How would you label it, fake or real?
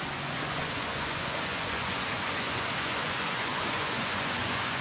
fake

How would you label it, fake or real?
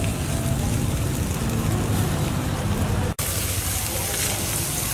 real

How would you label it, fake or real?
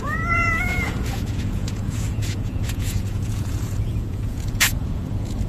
fake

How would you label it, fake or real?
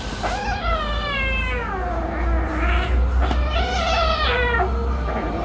real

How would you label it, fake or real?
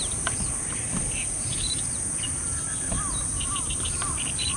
fake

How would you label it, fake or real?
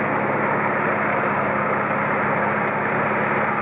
real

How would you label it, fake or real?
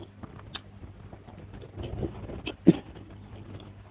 fake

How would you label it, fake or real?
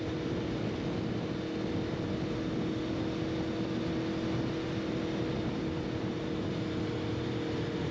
real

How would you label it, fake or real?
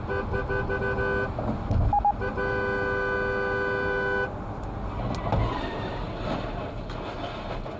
real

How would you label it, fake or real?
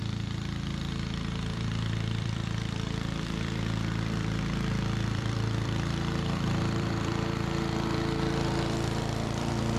fake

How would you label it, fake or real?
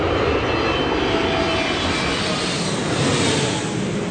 real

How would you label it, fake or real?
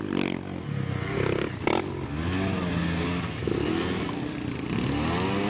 real